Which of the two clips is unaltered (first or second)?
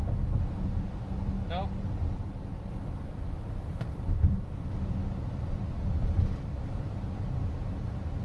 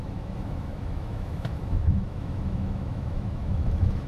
first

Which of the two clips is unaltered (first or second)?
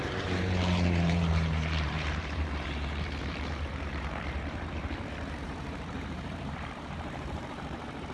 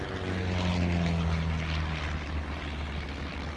second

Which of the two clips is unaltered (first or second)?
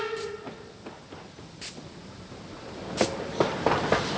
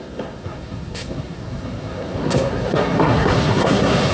first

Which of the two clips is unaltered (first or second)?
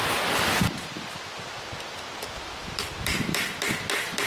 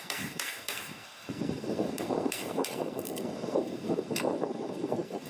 first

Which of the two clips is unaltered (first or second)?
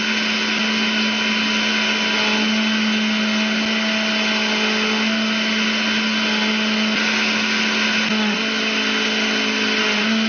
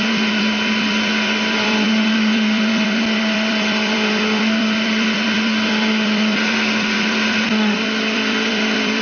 first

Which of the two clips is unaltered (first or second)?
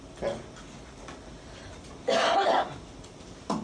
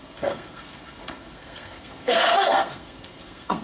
first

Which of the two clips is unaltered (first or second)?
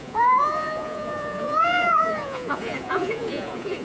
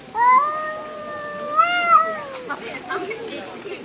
second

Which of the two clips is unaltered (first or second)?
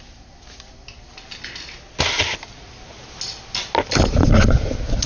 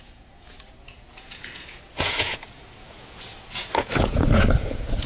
first